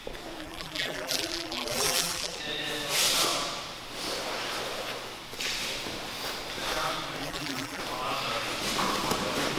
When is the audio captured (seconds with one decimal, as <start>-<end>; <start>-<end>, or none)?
0.0-0.4; 2.4-7.2; 7.8-9.6